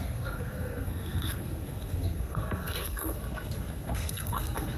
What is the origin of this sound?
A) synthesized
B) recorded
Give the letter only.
A